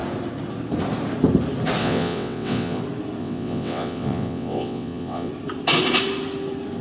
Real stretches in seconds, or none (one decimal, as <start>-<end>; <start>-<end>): 0.0-1.8; 2.8-3.2; 5.3-6.8